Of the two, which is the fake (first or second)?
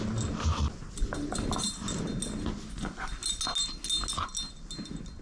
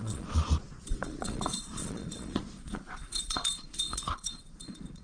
second